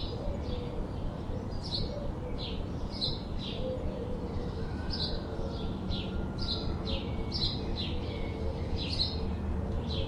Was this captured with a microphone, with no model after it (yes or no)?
yes